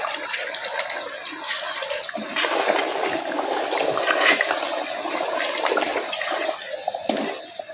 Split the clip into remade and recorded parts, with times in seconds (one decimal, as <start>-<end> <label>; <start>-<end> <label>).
0.0-5.9 recorded; 5.9-6.6 remade; 6.6-7.7 recorded